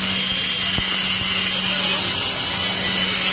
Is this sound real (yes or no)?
yes